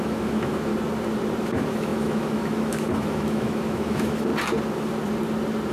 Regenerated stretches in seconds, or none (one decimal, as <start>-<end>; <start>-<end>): 0.0-0.7; 1.4-4.3